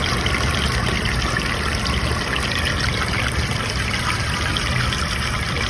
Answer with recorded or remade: recorded